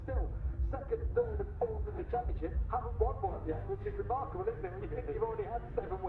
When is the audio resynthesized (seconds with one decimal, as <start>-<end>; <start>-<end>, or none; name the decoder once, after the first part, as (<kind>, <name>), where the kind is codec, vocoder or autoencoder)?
1.2-2.3 (autoencoder, DAC-VAE); 3.3-4.0